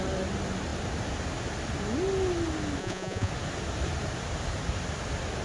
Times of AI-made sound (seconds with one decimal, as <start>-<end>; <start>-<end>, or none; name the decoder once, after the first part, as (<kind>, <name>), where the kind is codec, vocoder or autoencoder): 2.8-3.3 (vocoder, Vocos)